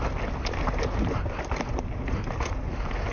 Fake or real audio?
real